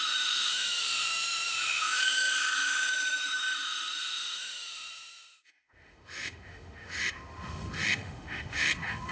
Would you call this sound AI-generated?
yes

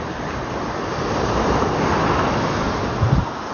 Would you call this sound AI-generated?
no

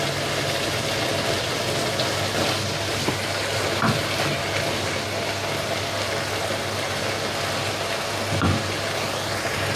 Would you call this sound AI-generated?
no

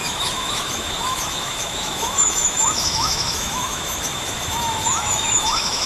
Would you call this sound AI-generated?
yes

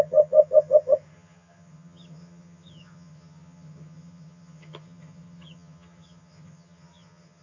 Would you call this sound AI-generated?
yes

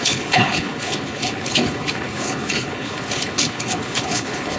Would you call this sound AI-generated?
yes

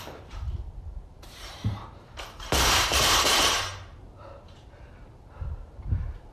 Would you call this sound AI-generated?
yes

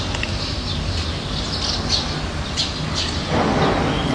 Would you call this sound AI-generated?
no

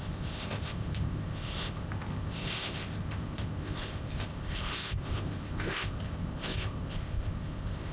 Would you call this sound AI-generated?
yes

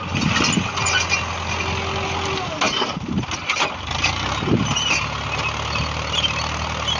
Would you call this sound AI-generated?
no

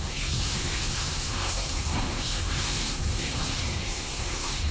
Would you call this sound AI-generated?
yes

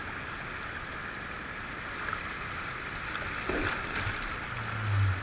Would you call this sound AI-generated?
no